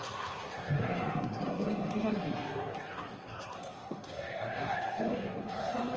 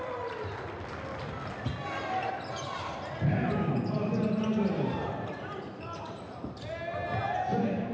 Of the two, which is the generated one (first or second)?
first